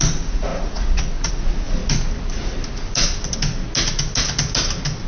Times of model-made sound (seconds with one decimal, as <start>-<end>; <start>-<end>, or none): 0.0-1.8